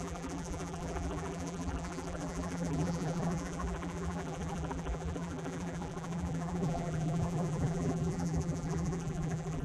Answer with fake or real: fake